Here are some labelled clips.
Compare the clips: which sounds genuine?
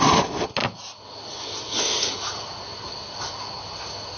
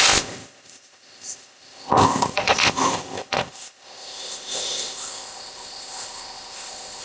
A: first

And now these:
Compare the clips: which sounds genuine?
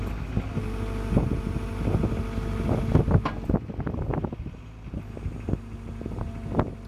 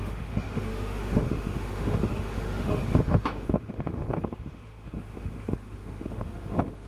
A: first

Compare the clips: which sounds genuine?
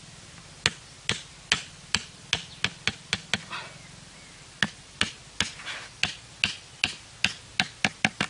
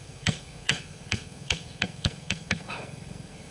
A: first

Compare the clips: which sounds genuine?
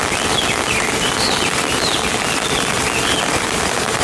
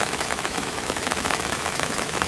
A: first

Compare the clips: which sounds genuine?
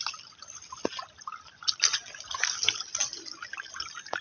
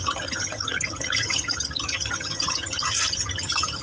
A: first